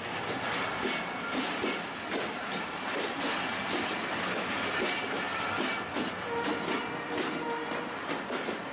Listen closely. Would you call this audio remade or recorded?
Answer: recorded